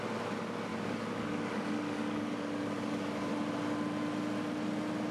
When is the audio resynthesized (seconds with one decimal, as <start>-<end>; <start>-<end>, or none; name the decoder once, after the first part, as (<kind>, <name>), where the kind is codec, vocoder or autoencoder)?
0.7-3.3 (codec, DAC)